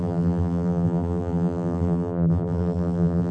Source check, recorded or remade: remade